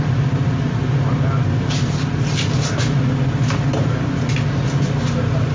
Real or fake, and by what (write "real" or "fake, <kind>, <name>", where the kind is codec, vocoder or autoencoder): real